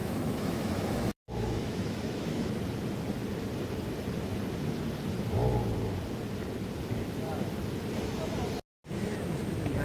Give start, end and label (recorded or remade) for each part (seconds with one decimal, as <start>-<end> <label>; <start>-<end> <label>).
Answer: 0.0-2.6 remade; 2.6-9.8 recorded